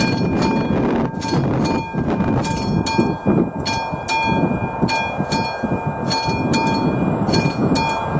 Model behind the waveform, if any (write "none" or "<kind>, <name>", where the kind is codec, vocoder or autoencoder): none